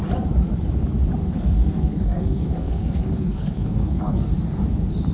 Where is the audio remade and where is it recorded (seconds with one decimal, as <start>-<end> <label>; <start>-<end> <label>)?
0.0-1.2 recorded; 1.2-4.3 remade; 4.3-5.1 recorded